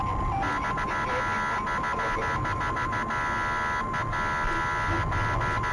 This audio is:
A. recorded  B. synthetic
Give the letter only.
A